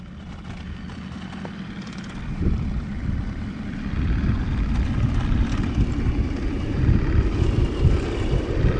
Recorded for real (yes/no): yes